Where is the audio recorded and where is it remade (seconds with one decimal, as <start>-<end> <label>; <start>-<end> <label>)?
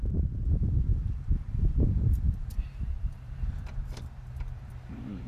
0.0-5.3 remade